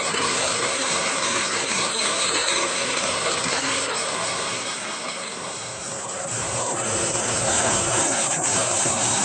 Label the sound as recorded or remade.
remade